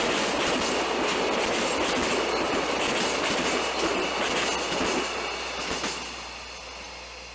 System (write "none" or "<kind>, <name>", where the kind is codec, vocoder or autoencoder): none